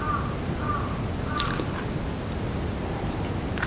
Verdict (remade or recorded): recorded